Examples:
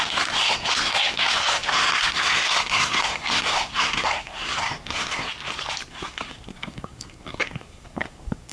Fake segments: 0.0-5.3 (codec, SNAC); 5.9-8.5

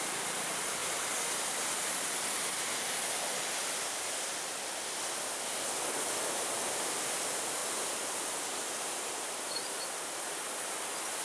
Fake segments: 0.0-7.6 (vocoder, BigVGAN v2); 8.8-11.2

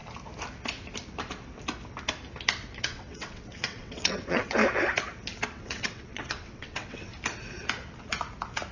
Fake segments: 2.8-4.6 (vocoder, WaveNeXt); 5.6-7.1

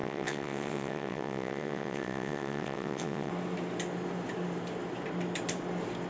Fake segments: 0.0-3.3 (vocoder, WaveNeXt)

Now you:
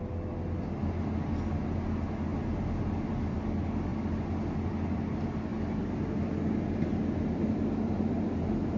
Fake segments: none

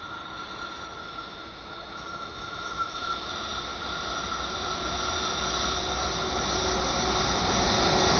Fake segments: 1.0-3.3 (autoencoder, DAC-VAE)